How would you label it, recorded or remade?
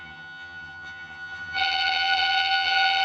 remade